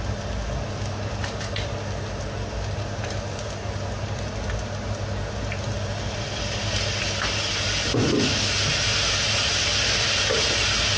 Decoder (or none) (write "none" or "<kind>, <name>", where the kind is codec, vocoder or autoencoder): none